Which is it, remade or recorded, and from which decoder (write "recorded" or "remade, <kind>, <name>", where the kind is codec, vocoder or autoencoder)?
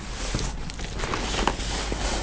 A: recorded